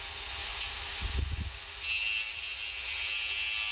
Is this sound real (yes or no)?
yes